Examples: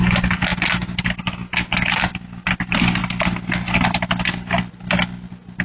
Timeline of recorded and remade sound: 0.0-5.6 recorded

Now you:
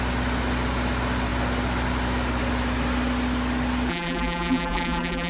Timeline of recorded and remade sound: 0.0-3.9 recorded; 3.9-5.3 remade